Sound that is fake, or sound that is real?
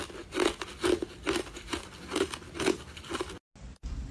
real